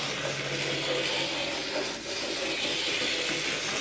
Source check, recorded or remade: recorded